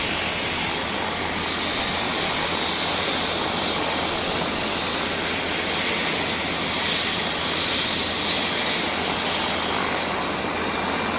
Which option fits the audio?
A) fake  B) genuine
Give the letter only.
B